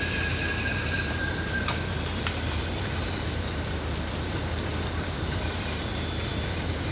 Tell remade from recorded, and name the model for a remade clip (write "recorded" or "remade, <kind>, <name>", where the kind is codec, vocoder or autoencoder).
recorded